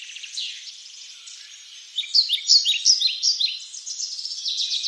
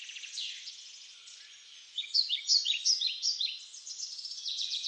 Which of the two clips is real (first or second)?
first